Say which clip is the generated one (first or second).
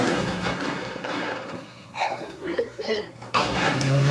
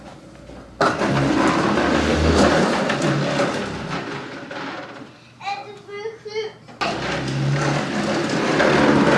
first